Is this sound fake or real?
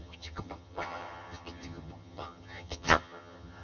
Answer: fake